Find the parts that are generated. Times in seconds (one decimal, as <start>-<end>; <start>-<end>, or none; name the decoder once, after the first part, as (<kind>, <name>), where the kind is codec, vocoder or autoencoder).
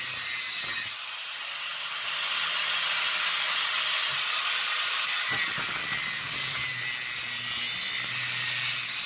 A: none